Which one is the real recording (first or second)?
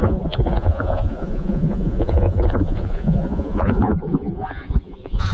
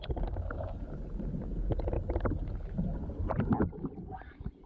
second